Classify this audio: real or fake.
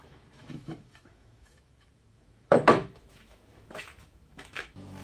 fake